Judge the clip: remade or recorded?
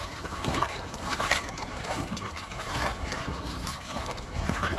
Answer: remade